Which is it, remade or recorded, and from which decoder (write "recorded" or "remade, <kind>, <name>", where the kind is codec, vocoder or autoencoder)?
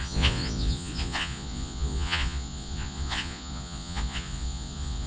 remade, vocoder, Vocos